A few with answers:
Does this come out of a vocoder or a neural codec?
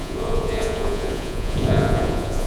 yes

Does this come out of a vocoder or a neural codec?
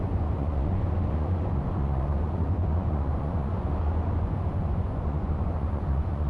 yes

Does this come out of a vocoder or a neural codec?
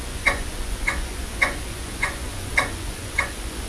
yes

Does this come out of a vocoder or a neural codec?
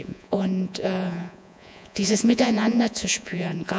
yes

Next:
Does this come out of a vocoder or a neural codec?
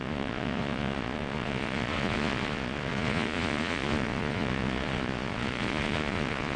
yes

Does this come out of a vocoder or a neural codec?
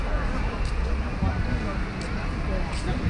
no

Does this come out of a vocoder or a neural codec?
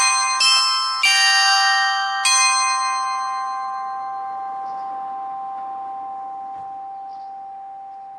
no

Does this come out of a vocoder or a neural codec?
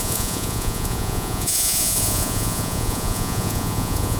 yes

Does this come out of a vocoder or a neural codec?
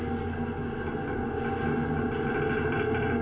no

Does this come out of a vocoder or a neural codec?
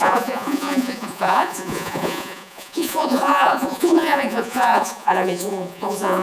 yes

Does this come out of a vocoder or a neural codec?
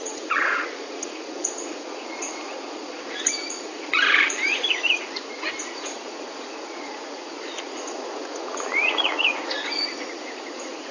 yes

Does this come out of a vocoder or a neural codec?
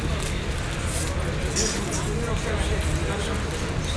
no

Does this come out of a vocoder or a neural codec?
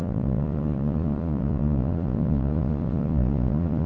yes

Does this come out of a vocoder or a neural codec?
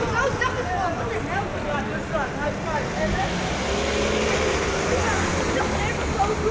no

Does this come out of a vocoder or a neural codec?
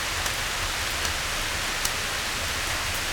no